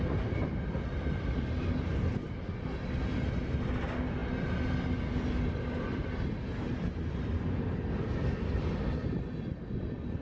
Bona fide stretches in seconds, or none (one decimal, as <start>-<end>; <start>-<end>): 0.0-10.2

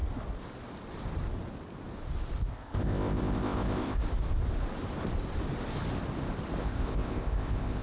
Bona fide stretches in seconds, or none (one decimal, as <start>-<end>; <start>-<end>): 0.0-2.5; 4.0-6.6